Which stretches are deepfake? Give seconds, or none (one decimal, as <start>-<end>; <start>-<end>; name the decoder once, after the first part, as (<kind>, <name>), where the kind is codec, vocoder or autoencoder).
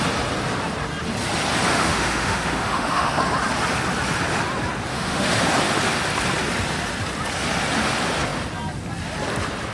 1.7-3.2 (autoencoder, DAC-VAE); 4.9-5.4